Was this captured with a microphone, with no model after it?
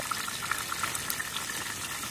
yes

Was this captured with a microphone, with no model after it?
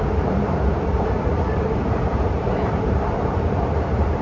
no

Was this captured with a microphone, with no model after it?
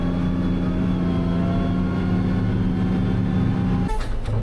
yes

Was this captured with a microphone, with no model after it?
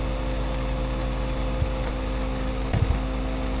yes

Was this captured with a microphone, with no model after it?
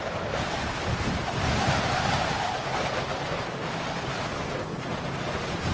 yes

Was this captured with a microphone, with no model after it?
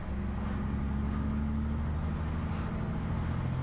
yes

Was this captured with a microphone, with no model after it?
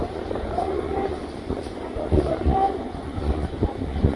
no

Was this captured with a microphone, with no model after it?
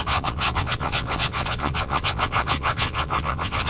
no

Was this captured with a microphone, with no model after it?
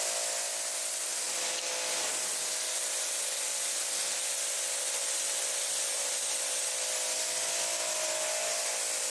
yes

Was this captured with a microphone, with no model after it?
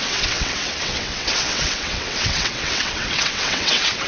no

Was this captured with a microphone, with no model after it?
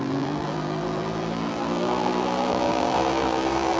no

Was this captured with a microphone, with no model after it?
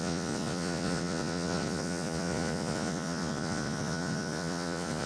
no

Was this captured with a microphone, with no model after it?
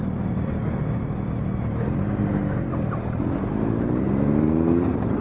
yes